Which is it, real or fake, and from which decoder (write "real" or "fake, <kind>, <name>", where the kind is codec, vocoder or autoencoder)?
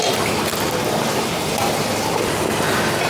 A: real